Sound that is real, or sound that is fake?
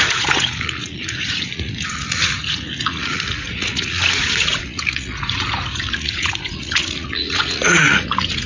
fake